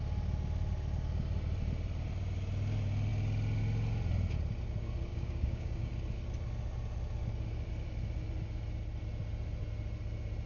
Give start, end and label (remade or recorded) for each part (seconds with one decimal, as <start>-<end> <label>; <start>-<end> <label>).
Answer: 0.0-5.1 recorded; 5.1-5.9 remade; 5.9-10.5 recorded